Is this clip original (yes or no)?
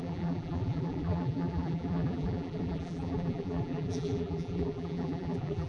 no